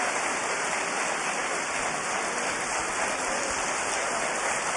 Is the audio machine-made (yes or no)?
no